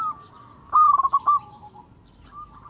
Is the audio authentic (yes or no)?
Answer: yes